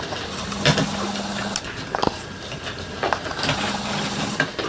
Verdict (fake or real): real